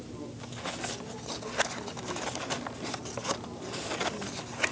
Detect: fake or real real